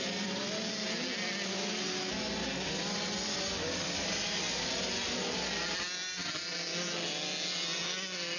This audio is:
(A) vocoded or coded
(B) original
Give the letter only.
B